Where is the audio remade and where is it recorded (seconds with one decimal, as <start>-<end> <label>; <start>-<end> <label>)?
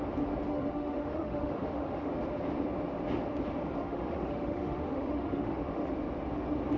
0.0-0.5 recorded; 0.5-2.1 remade; 2.1-3.8 recorded; 3.8-5.9 remade; 5.9-6.8 recorded